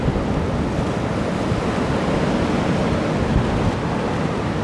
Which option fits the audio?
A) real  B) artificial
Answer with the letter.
A